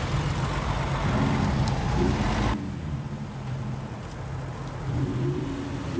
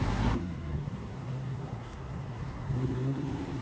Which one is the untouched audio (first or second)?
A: first